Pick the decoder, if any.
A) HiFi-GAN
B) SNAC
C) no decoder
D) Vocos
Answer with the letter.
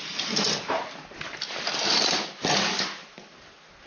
C